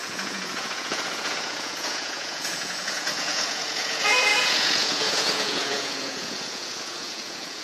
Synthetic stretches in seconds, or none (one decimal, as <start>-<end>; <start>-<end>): 0.0-7.6